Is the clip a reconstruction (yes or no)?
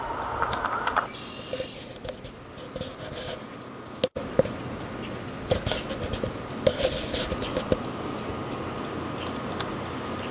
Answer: no